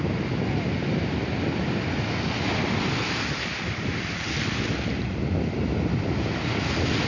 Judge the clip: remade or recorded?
recorded